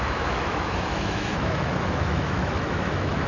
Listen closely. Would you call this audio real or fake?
fake